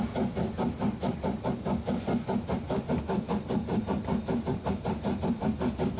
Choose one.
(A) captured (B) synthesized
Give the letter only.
A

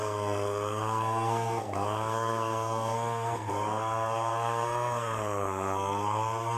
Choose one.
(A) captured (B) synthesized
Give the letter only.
B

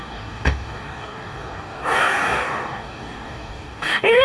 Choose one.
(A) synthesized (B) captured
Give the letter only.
A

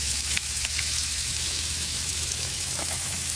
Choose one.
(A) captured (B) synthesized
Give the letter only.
B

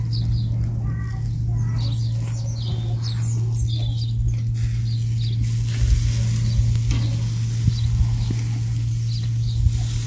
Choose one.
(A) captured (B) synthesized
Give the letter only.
A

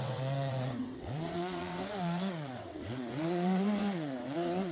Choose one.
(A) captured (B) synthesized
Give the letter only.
B